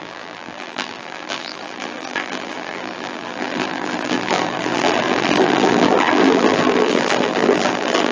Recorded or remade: remade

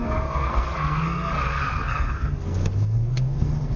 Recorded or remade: remade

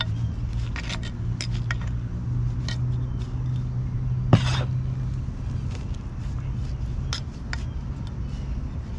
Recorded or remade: recorded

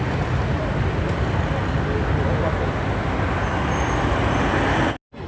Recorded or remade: recorded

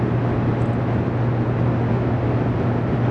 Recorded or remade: recorded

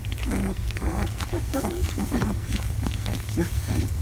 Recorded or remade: remade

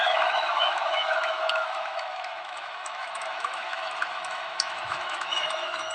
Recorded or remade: remade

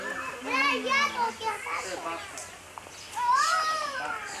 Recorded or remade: recorded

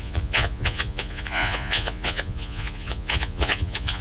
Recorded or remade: remade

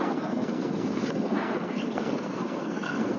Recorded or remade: remade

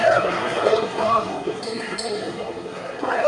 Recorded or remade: remade